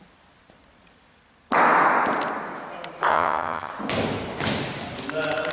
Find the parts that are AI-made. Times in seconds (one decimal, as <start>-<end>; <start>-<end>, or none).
3.1-3.7